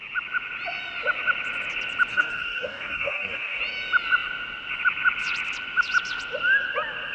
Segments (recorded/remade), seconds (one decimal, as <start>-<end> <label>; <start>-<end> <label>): 0.0-2.1 recorded; 2.1-3.6 remade; 3.6-7.1 recorded

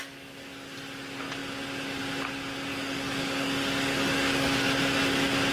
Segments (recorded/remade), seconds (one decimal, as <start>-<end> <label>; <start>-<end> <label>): 0.0-2.7 recorded; 2.7-4.7 remade; 4.7-5.5 recorded

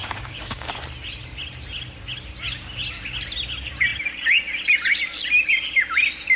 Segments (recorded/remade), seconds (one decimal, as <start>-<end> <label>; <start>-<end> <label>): 0.0-0.7 remade; 0.7-6.4 recorded

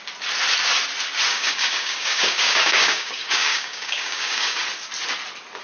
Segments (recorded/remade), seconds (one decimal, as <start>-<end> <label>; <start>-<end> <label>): 0.0-1.3 recorded; 1.3-4.6 remade; 4.6-5.6 recorded

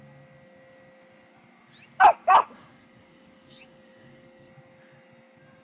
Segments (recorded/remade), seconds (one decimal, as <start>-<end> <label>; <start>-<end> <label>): 0.0-2.2 recorded; 2.2-4.5 remade; 4.5-5.6 recorded

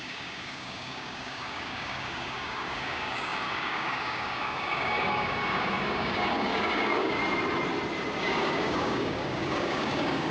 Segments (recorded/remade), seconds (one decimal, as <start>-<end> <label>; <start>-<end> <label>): 0.0-7.2 remade; 7.2-8.2 recorded; 8.2-10.3 remade

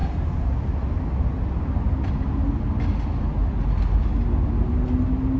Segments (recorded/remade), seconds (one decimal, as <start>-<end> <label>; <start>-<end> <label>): 0.0-5.4 recorded

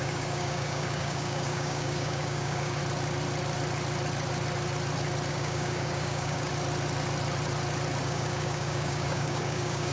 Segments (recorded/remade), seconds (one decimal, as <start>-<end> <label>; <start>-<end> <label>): 0.0-2.8 remade; 2.8-5.3 recorded; 5.3-6.5 remade; 6.5-8.0 recorded; 8.0-9.9 remade